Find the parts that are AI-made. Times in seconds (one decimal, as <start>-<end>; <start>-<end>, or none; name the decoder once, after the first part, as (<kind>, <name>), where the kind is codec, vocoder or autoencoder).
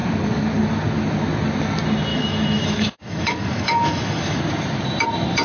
2.1-4.4 (autoencoder, DAC-VAE)